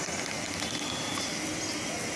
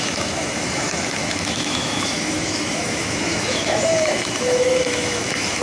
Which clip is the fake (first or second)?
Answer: second